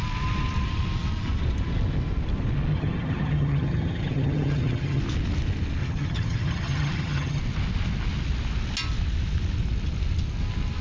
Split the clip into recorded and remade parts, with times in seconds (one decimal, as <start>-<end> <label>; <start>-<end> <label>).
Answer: 0.0-2.7 recorded; 2.7-5.0 remade; 5.0-5.8 recorded; 5.8-7.4 remade; 7.4-10.8 recorded